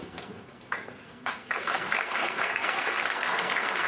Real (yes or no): no